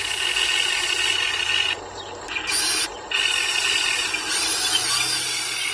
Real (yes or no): yes